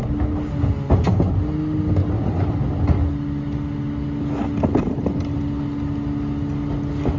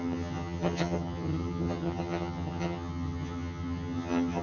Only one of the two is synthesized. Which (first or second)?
second